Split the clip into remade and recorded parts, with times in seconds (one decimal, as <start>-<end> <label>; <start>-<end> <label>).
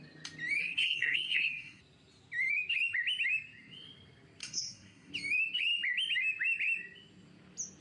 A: 0.0-0.6 recorded; 0.6-1.8 remade; 1.8-4.4 recorded; 4.4-5.1 remade; 5.1-7.8 recorded